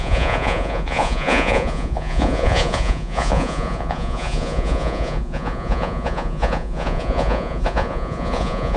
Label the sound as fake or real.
fake